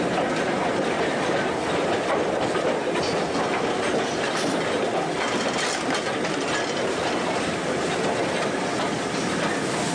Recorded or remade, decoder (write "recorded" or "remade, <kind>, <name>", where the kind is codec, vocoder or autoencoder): recorded